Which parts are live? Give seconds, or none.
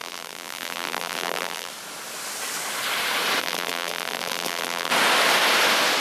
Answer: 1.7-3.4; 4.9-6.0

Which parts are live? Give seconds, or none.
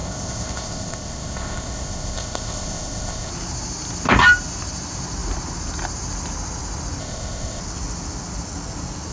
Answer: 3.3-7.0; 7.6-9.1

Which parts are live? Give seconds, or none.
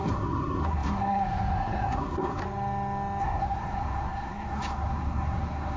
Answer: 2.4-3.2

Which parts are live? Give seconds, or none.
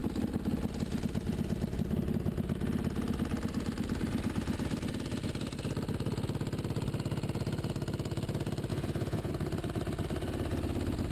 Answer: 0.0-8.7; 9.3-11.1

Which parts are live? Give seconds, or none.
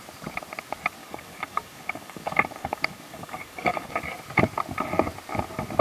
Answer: 0.0-1.0; 3.9-5.8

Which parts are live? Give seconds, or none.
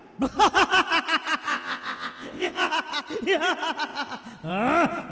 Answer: 0.0-1.5; 2.7-5.1